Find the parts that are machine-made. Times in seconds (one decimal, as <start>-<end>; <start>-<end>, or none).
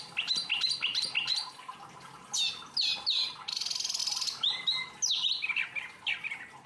none